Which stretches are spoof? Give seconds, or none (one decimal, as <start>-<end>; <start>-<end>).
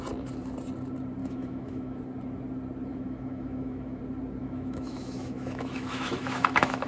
1.2-2.0; 2.9-4.0; 4.4-6.9